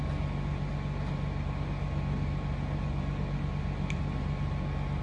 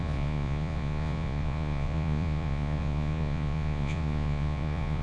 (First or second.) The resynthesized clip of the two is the second